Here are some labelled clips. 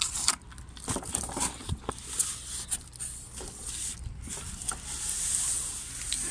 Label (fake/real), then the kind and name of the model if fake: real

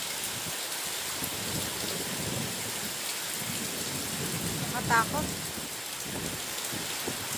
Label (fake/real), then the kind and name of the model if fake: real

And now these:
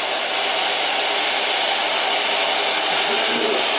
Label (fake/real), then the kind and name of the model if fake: real